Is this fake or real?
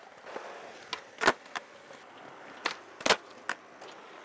real